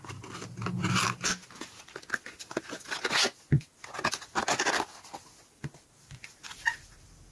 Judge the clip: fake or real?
real